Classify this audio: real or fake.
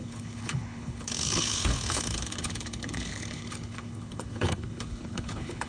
fake